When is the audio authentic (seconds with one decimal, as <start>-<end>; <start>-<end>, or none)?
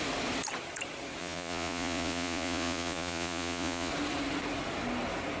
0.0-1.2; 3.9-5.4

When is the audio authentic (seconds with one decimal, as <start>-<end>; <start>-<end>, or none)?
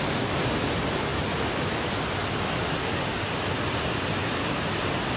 0.0-5.2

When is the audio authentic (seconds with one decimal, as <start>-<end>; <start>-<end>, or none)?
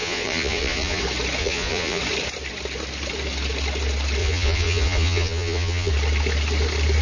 1.0-1.4; 2.0-4.2; 5.9-7.0